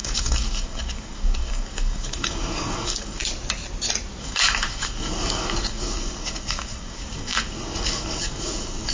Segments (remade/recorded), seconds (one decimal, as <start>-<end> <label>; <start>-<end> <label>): 0.0-3.2 remade; 3.2-4.2 recorded; 4.2-8.9 remade